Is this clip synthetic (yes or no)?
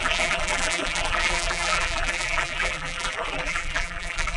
yes